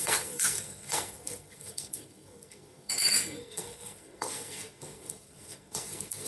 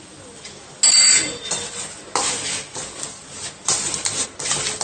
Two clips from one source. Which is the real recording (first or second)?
second